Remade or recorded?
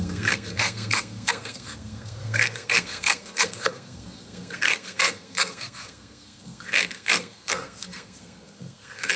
remade